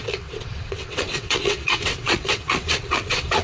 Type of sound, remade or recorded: remade